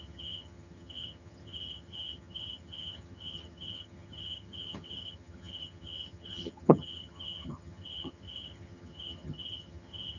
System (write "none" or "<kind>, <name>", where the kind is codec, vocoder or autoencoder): vocoder, HiFi-GAN